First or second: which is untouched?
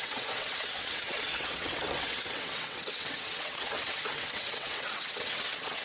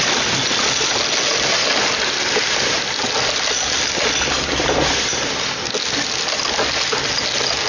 second